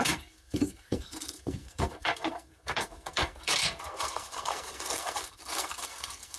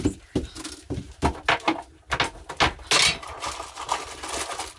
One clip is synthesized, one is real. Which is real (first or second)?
second